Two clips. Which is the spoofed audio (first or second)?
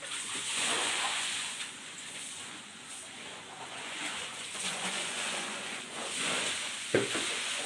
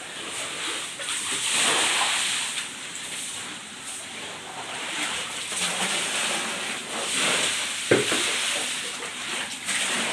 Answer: first